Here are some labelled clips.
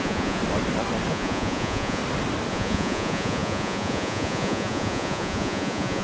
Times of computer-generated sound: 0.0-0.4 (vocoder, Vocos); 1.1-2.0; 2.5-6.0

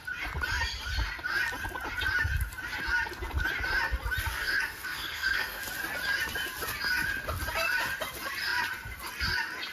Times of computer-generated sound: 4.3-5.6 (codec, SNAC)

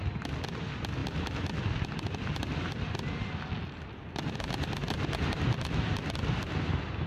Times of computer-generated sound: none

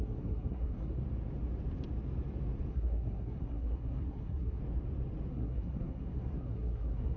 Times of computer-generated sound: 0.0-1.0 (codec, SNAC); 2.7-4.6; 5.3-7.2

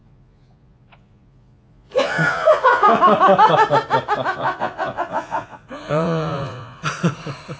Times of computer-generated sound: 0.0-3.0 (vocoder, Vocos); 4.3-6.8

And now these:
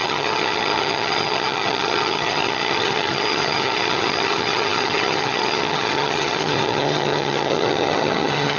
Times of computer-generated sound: 0.0-8.6 (vocoder, HiFi-GAN)

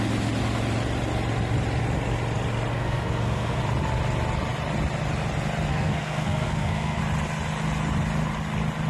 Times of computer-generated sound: 2.7-3.6 (codec, SNAC); 5.7-7.0

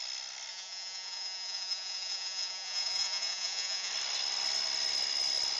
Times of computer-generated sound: 0.5-3.9 (vocoder, Vocos)